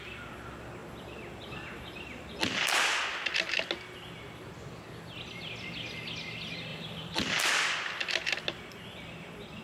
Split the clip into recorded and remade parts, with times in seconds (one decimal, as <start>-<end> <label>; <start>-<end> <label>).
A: 0.0-0.8 recorded; 0.8-2.2 remade; 2.2-6.7 recorded; 6.7-7.4 remade; 7.4-9.6 recorded